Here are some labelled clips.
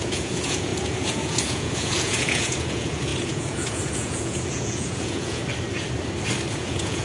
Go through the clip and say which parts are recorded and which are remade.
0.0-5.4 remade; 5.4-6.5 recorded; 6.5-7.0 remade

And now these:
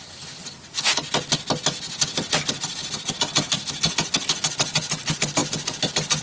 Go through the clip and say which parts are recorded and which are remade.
0.0-6.2 recorded

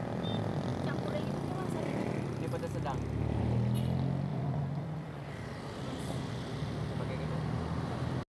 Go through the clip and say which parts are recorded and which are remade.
0.0-4.3 recorded; 4.3-5.3 remade; 5.3-8.3 recorded